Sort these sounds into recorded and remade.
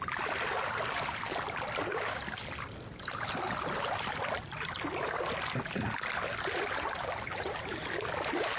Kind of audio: recorded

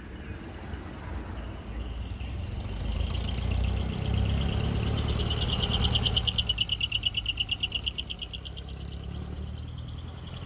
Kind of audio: recorded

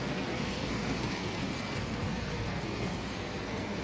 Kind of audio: remade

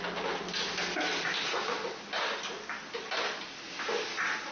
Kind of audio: recorded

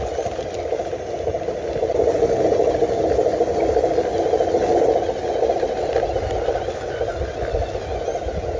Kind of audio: recorded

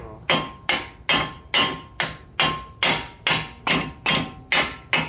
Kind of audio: recorded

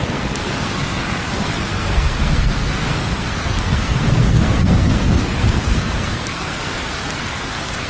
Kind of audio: remade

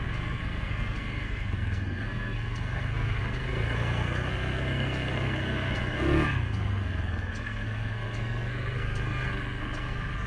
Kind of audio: remade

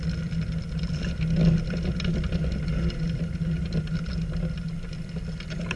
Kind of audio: recorded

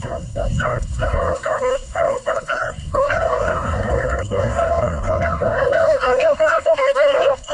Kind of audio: remade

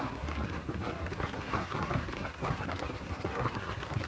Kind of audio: remade